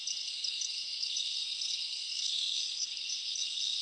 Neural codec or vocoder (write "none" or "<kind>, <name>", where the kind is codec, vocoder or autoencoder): codec, SNAC